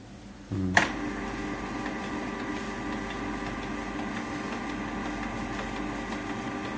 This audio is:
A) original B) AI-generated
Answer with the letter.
A